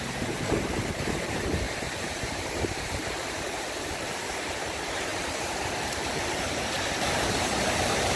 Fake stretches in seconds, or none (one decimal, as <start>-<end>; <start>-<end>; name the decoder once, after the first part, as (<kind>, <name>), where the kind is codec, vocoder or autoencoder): 0.0-8.2 (vocoder, BigVGAN v2)